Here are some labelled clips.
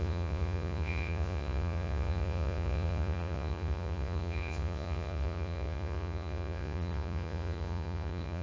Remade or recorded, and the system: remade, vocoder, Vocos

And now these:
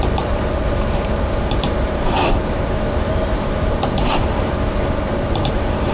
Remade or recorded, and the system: remade, vocoder, BigVGAN v2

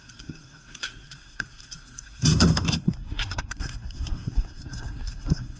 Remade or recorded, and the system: remade, codec, SNAC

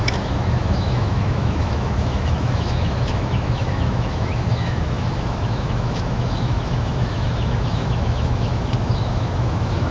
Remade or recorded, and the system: remade, autoencoder, DAC-VAE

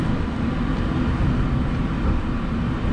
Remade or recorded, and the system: recorded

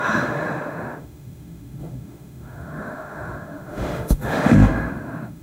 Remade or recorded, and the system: remade, autoencoder, DAC-VAE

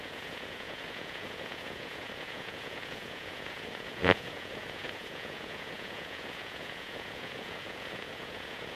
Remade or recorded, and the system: remade, vocoder, Vocos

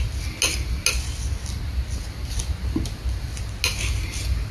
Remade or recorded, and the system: recorded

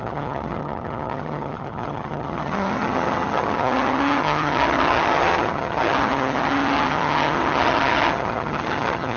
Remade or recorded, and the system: remade, vocoder, HiFi-GAN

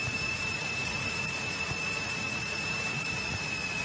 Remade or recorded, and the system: remade, vocoder, Vocos